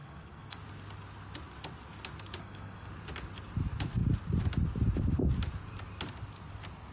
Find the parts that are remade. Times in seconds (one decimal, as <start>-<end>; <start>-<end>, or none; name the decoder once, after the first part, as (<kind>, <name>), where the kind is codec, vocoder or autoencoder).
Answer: 0.0-0.6 (codec, SNAC); 2.4-2.9